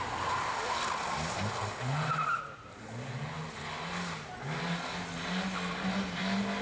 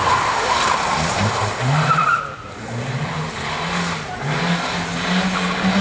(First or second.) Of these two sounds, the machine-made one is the second